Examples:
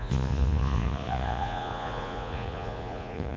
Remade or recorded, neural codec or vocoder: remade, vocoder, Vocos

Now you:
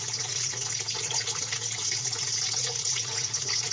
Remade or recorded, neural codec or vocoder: remade, vocoder, Vocos